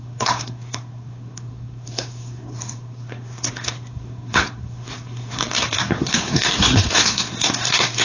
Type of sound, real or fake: fake